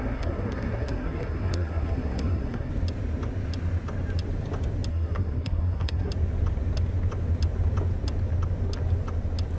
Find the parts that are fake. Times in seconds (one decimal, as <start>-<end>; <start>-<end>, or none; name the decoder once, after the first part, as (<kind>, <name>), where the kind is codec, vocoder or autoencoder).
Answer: 0.0-2.7 (codec, SNAC); 4.9-6.1